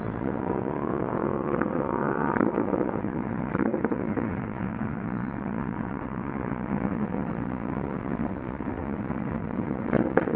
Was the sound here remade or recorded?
remade